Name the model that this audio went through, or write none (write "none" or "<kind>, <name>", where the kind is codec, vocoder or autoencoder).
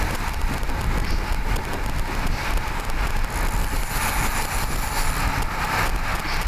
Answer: none